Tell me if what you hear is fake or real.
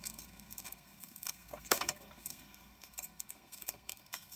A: fake